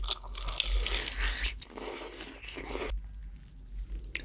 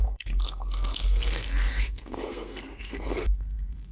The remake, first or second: second